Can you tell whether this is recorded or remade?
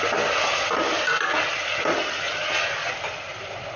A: recorded